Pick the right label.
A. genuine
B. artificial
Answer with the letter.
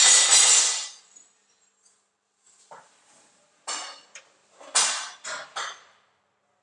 A